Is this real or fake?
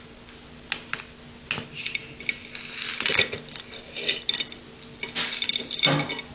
real